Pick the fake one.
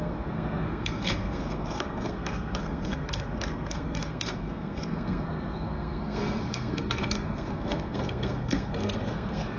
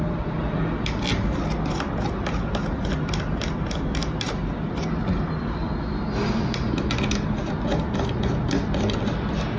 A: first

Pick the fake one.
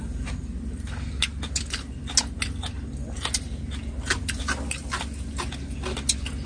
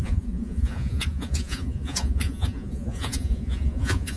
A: second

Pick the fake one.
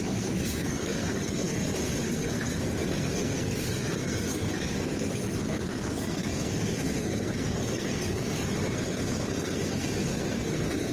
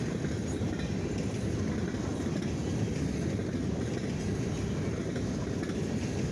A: first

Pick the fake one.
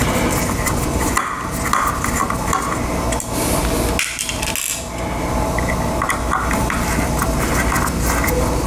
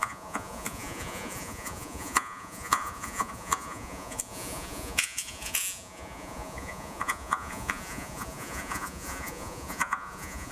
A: second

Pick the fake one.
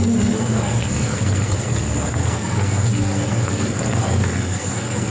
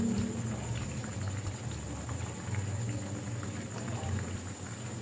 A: first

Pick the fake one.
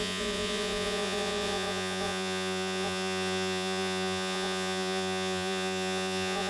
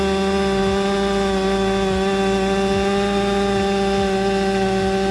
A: first